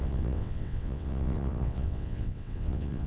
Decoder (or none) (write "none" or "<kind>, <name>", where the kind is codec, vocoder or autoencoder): vocoder, WaveNeXt